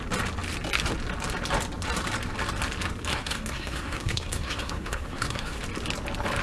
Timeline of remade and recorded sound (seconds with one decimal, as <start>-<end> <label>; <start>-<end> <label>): 0.0-3.1 recorded; 3.1-5.6 remade; 5.6-6.4 recorded